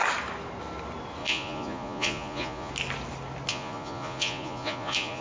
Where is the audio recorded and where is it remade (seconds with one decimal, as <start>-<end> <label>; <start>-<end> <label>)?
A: 0.0-1.2 recorded; 1.2-2.7 remade; 2.7-3.5 recorded; 3.5-5.2 remade